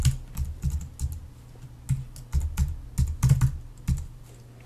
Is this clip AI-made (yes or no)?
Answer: no